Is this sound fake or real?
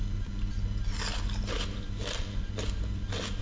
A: real